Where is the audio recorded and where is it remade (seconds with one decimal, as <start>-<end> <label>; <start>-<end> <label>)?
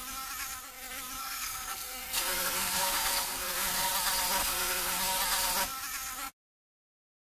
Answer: 0.0-1.2 recorded; 1.2-3.9 remade; 3.9-4.4 recorded; 4.4-4.9 remade; 4.9-7.3 recorded